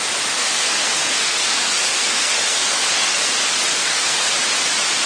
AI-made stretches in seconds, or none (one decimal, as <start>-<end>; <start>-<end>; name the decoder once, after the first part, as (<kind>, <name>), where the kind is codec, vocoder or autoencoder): 0.4-3.3 (codec, SNAC); 3.7-4.3